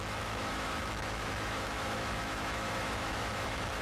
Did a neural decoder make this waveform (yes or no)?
yes